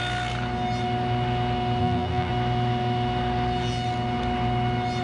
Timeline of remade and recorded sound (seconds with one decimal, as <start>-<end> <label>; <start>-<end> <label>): 0.0-1.8 recorded; 1.8-2.3 remade; 2.3-5.0 recorded